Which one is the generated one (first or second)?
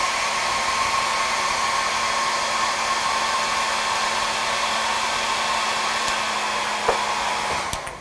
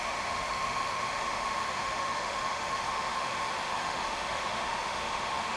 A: second